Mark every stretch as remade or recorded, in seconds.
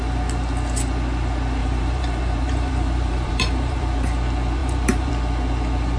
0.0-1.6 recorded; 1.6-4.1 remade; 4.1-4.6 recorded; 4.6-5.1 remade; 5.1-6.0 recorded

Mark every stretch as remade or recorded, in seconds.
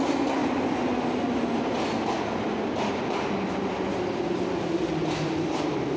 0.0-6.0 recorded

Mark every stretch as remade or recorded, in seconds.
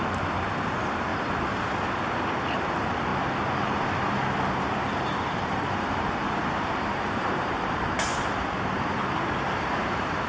0.0-1.1 remade; 1.1-2.7 recorded; 2.7-3.1 remade; 3.1-4.5 recorded; 4.5-8.1 remade; 8.1-8.6 recorded; 8.6-10.3 remade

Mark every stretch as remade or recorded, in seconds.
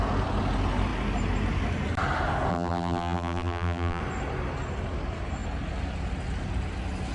0.0-2.5 recorded; 2.5-4.0 remade; 4.0-7.1 recorded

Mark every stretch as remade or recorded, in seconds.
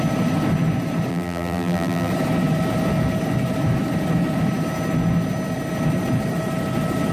0.0-1.1 recorded; 1.1-2.1 remade; 2.1-7.1 recorded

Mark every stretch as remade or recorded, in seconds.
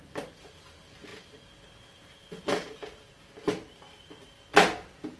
0.0-4.5 recorded; 4.5-5.2 remade